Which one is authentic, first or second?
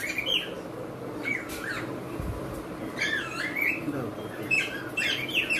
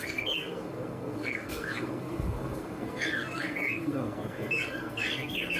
first